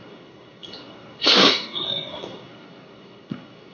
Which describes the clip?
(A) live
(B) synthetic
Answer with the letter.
B